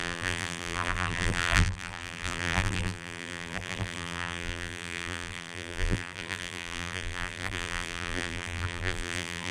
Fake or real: fake